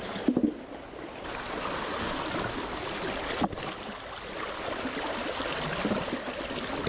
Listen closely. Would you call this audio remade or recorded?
recorded